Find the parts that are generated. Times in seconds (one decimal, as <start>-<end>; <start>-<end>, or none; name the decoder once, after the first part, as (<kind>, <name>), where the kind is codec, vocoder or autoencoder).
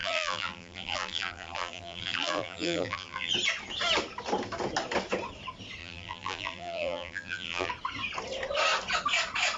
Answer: 0.0-3.3 (vocoder, BigVGAN v2); 5.8-7.7